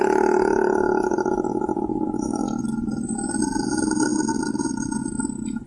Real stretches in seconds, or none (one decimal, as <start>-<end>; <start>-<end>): 0.0-5.7

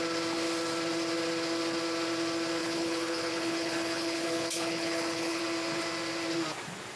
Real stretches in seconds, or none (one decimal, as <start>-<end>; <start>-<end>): 0.0-2.6; 5.4-7.0

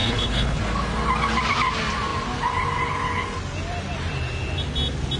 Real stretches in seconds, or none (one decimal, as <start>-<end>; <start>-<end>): 0.6-5.2

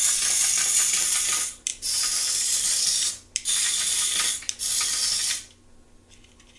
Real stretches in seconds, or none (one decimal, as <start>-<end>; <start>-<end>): 0.0-6.6